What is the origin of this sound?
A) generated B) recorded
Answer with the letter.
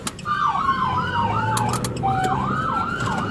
B